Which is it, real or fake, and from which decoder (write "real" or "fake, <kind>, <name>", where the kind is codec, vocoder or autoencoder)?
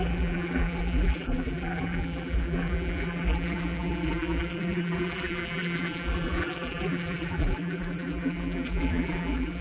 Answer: fake, vocoder, BigVGAN v2